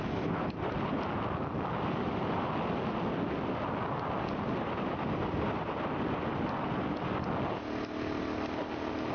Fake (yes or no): no